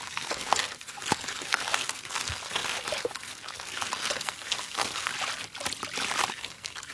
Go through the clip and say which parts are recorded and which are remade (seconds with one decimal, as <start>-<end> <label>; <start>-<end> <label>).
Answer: 0.0-5.1 remade; 5.1-6.3 recorded; 6.3-6.9 remade

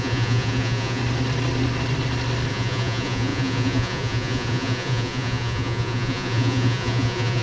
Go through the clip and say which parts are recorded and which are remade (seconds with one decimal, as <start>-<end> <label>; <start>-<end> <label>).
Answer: 0.0-1.0 remade; 1.0-2.5 recorded; 2.5-7.4 remade

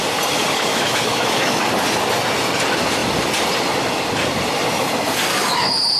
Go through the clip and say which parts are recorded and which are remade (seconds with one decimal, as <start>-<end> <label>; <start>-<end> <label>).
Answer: 0.0-0.7 recorded; 0.7-1.7 remade; 1.7-6.0 recorded